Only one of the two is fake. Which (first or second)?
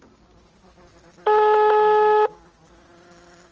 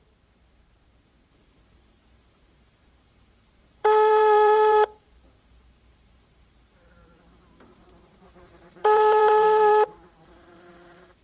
second